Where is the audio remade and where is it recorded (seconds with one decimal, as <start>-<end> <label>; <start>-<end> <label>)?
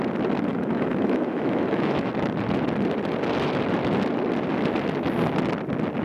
0.0-0.5 recorded; 0.5-2.1 remade; 2.1-6.0 recorded